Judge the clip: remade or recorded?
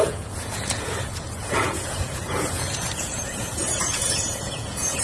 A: remade